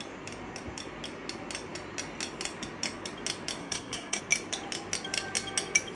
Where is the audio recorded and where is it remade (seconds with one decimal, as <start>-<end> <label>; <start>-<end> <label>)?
0.0-3.6 recorded; 3.6-4.2 remade; 4.2-6.0 recorded